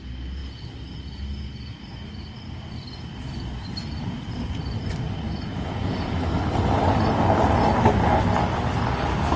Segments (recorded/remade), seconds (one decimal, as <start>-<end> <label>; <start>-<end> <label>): 0.0-5.5 recorded; 5.5-6.1 remade; 6.1-9.4 recorded